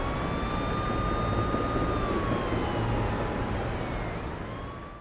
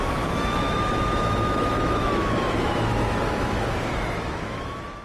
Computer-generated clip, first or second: second